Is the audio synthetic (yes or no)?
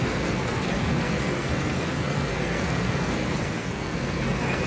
yes